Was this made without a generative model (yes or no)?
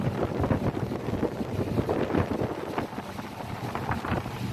yes